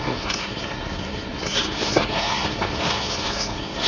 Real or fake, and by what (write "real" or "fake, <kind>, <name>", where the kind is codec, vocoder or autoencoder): fake, codec, SNAC